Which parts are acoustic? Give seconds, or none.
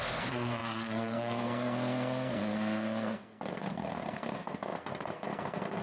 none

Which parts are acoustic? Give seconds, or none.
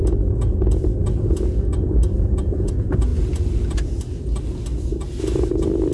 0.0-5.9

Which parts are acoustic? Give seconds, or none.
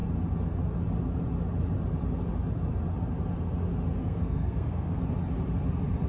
0.0-4.0; 5.0-6.1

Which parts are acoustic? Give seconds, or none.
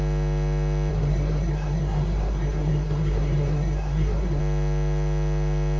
0.0-0.9; 4.4-5.8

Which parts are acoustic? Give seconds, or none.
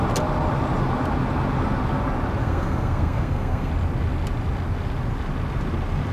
0.0-2.4; 3.7-6.1